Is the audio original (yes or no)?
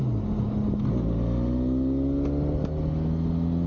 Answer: yes